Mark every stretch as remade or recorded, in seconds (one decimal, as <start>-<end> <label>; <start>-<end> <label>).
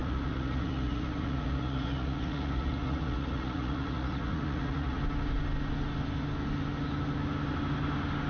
0.0-5.0 remade; 5.0-8.3 recorded